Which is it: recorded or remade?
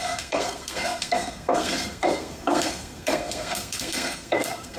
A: remade